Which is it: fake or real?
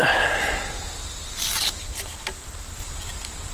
real